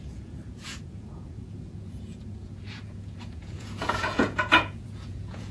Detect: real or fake fake